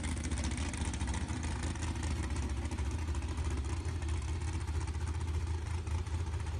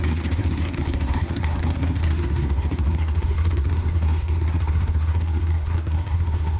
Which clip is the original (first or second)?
first